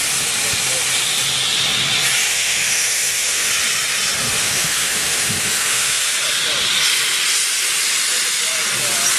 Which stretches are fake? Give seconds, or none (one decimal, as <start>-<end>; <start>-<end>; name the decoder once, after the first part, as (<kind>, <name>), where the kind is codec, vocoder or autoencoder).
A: 2.3-3.5 (autoencoder, DAC-VAE); 4.4-6.1